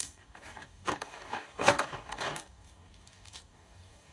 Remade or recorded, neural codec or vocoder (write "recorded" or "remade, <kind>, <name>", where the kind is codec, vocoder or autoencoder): remade, codec, DAC